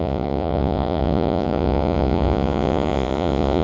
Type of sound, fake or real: fake